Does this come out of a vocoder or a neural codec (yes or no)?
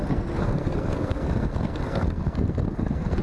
yes